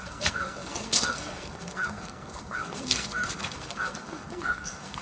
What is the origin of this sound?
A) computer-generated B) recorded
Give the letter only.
A